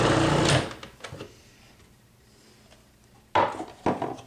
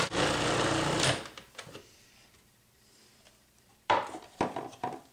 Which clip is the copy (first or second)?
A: second